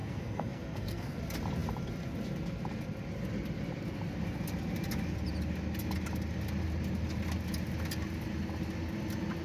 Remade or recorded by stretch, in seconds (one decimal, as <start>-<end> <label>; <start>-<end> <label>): 0.0-1.2 remade; 1.2-9.4 recorded